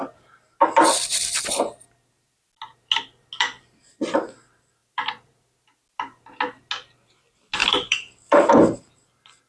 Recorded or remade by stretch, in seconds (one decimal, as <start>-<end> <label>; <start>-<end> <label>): 0.0-4.8 recorded; 4.8-5.3 remade; 5.3-7.6 recorded; 7.6-8.5 remade; 8.5-9.5 recorded